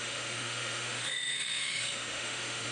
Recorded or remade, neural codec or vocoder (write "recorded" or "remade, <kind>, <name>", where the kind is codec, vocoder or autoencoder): remade, autoencoder, DAC-VAE